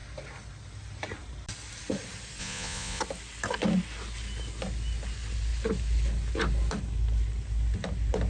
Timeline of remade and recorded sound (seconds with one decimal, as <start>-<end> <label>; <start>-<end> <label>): 0.0-2.4 recorded; 2.4-3.0 remade; 3.0-8.3 recorded